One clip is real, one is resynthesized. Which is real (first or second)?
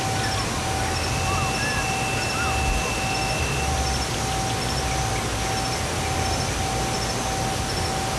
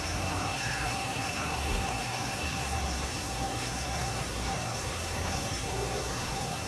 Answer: first